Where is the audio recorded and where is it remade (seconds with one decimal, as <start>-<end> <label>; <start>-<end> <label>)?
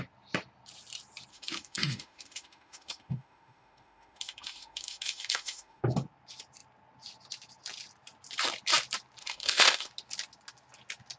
0.0-1.3 recorded; 1.3-5.8 remade; 5.8-9.2 recorded; 9.2-9.9 remade; 9.9-11.2 recorded